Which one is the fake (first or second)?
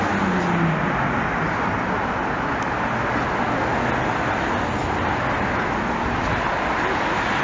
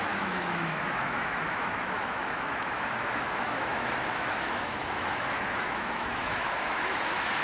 second